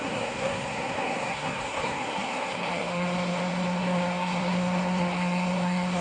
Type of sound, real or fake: fake